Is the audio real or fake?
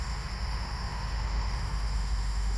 fake